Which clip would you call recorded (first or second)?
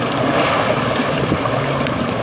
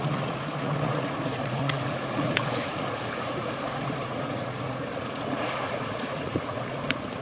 first